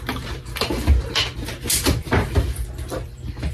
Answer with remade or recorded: remade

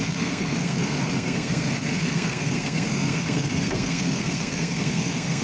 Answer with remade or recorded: remade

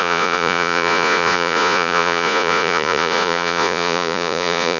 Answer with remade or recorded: remade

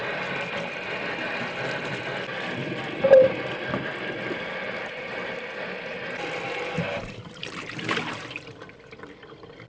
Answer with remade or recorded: remade